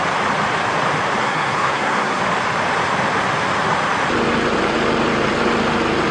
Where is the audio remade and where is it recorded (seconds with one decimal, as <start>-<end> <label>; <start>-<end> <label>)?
0.0-1.2 recorded; 1.2-2.2 remade; 2.2-6.1 recorded